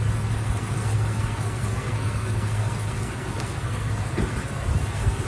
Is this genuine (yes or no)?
no